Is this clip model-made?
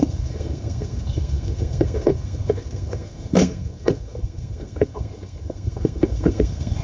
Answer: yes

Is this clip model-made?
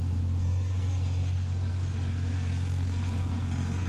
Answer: yes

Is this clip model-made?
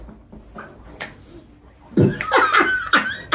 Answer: no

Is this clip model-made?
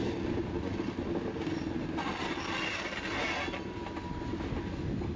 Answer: no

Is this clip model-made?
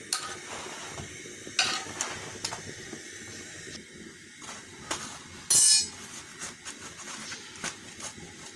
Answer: no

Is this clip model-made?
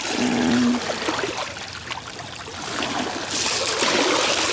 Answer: no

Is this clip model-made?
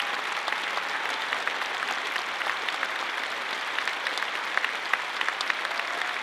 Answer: no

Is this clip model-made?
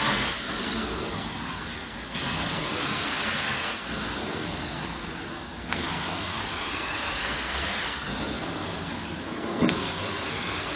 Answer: yes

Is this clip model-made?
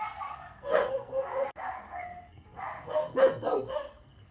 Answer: yes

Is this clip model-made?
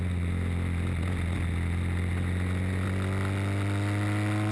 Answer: no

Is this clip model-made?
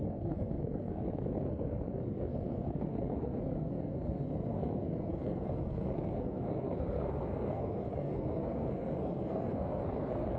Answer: yes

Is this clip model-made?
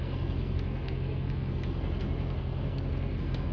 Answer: yes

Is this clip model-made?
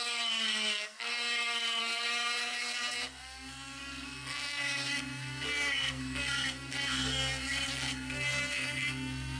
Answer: yes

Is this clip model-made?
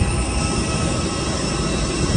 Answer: no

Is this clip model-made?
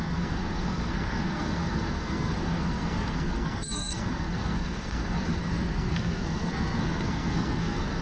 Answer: yes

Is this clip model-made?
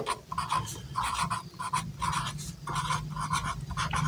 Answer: no